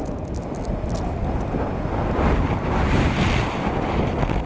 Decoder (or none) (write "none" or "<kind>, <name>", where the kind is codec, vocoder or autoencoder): none